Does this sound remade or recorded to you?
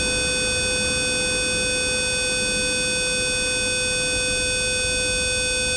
recorded